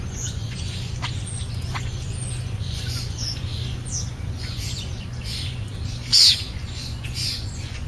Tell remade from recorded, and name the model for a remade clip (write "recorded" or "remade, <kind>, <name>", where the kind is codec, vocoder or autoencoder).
remade, vocoder, Vocos